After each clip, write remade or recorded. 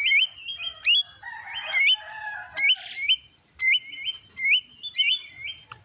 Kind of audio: recorded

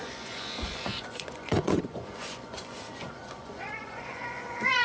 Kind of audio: remade